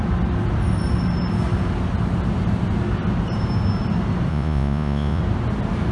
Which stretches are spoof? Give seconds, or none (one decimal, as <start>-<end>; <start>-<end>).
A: 4.3-5.2